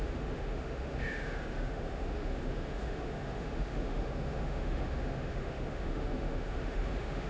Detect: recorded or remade remade